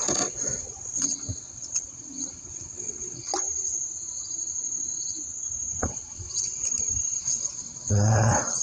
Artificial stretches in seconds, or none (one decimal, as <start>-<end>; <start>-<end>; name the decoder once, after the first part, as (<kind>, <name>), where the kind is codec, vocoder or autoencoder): 0.0-3.3 (vocoder, WaveNeXt); 5.8-6.5; 7.2-8.6

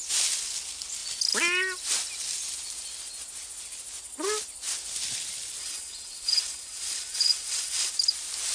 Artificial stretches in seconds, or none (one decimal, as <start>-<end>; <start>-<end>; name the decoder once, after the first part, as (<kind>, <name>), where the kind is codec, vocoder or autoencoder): 5.6-7.9 (vocoder, WaveNeXt)